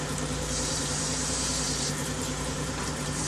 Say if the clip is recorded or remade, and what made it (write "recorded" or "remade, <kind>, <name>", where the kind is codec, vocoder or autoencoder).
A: remade, vocoder, BigVGAN v2